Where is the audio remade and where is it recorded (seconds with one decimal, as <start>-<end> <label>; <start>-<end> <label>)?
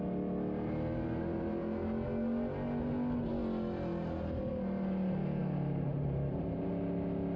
0.0-5.4 recorded; 5.4-6.7 remade; 6.7-7.4 recorded